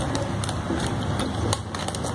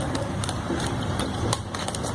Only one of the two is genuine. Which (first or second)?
first